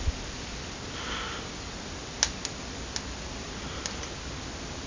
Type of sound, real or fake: real